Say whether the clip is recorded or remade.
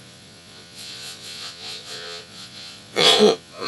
remade